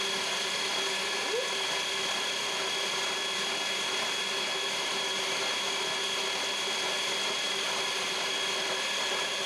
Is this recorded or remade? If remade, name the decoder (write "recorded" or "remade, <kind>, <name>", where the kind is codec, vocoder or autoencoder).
recorded